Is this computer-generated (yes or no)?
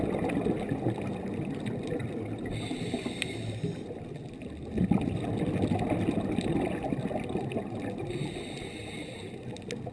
no